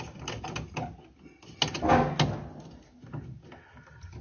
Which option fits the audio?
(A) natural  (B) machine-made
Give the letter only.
A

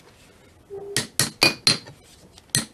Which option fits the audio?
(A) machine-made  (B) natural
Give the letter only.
B